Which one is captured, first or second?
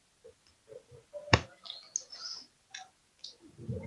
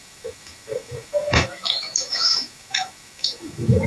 first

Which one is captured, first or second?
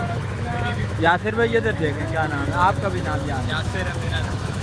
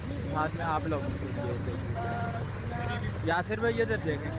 second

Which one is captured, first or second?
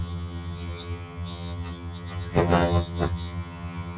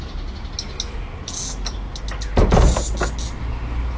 second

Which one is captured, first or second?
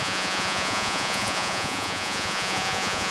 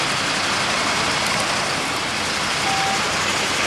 second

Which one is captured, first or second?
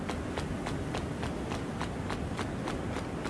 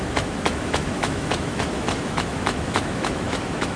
first